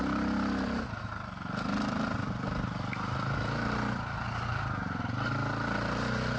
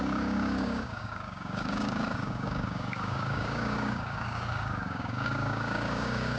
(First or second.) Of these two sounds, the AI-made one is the second